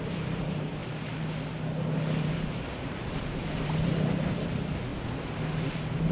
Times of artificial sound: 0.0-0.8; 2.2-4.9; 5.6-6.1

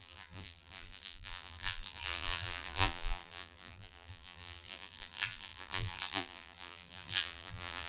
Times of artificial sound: 0.0-7.9

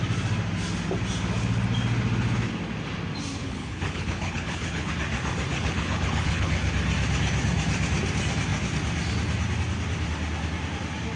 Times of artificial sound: 3.4-4.9; 5.5-6.5

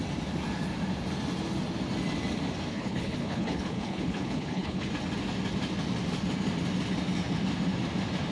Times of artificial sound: 2.7-4.9